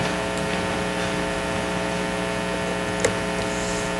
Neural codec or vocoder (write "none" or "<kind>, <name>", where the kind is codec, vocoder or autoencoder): none